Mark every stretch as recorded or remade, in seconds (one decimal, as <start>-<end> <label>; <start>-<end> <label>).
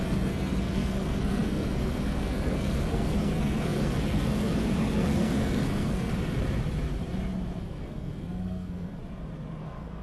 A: 0.0-6.1 remade; 6.1-7.6 recorded; 7.6-9.0 remade; 9.0-9.6 recorded; 9.6-10.0 remade